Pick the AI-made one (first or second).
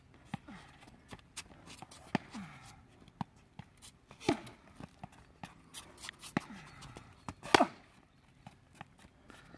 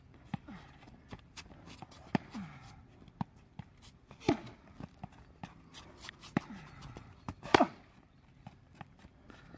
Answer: second